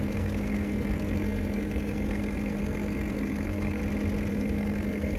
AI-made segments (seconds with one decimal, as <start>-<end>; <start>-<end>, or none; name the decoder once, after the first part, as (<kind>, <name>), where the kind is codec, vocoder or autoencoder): 0.0-3.8 (codec, SNAC); 4.3-5.2